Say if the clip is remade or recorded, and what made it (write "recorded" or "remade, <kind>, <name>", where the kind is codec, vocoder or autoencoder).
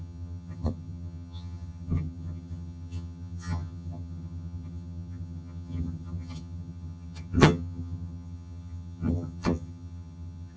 remade, vocoder, HiFi-GAN